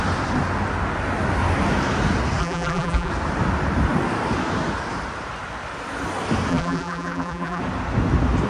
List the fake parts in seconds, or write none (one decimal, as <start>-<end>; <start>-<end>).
2.4-3.1; 6.5-7.6